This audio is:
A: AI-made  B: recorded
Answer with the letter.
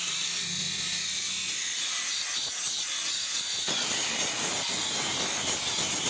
B